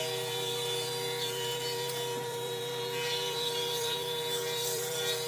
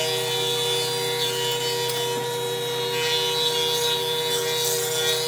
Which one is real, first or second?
second